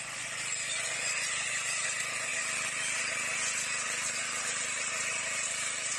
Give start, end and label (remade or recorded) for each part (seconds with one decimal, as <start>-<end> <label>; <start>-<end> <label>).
0.0-2.3 remade; 2.3-6.0 recorded